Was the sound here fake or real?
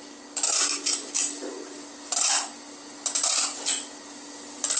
real